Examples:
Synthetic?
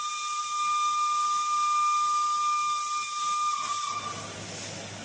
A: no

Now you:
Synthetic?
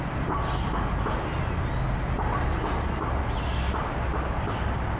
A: no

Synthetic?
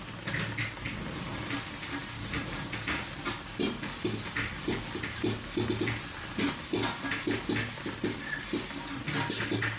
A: no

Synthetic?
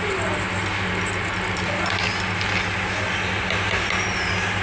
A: no